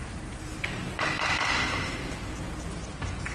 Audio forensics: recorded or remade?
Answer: recorded